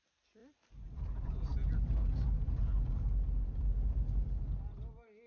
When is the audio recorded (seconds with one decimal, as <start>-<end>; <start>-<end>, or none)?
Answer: 0.0-5.3

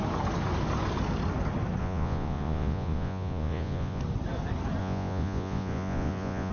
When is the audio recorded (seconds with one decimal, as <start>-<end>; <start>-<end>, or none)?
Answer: 0.0-1.8; 4.0-4.8

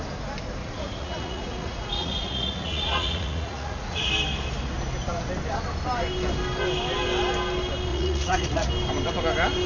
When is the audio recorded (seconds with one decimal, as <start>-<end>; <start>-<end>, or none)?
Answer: 0.0-0.6; 4.1-7.9; 8.7-9.7

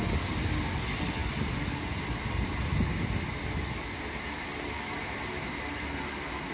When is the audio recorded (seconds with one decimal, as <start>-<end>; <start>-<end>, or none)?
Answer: 0.0-6.5